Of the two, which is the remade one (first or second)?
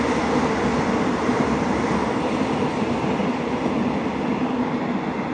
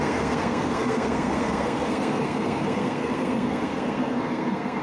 second